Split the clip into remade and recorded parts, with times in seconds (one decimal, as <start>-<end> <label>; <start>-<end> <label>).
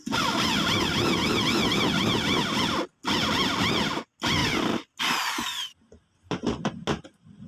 0.0-4.4 recorded; 4.4-5.0 remade; 5.0-7.5 recorded